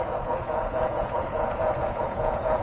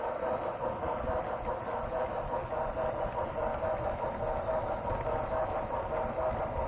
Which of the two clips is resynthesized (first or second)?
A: first